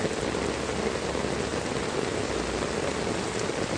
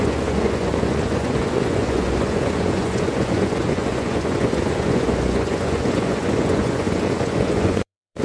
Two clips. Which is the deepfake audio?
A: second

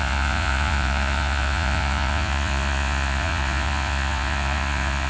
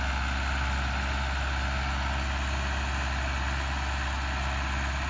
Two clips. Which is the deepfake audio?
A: first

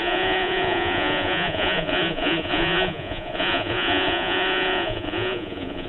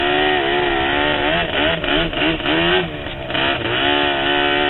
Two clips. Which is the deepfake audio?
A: first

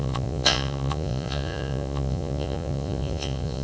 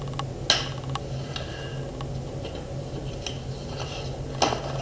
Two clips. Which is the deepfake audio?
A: first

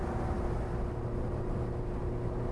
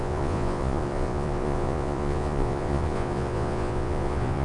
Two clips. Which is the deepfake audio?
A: second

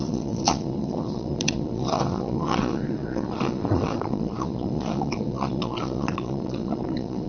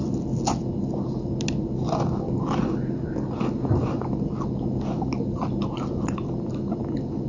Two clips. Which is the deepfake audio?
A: first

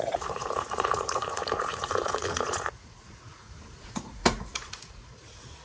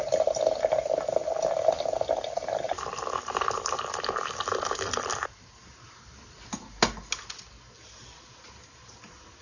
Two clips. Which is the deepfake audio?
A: first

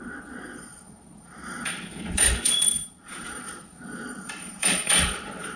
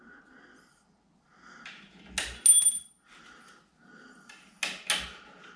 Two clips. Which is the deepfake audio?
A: first